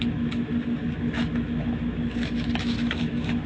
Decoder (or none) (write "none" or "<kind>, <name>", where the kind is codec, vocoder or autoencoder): autoencoder, DAC-VAE